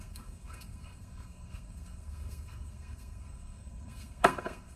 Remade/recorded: remade